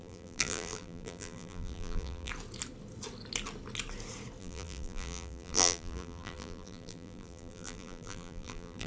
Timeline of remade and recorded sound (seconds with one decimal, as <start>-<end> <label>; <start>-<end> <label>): 0.0-2.3 remade; 2.3-4.4 recorded; 4.4-8.9 remade